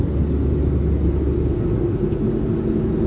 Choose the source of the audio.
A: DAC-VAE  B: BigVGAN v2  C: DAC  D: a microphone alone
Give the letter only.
D